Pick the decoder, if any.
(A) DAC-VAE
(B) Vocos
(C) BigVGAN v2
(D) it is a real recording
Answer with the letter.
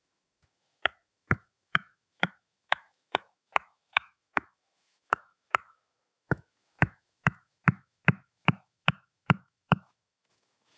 A